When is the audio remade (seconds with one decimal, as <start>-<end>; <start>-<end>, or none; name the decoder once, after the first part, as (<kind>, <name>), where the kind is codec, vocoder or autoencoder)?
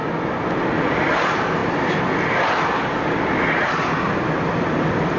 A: none